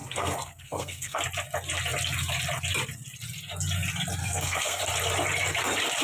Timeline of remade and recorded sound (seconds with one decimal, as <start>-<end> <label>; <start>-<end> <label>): 0.0-1.2 remade; 1.2-4.2 recorded; 4.2-4.8 remade; 4.8-6.0 recorded